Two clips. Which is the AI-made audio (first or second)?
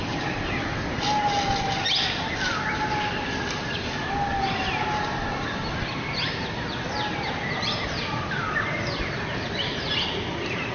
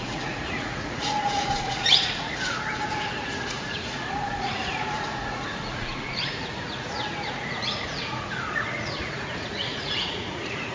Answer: second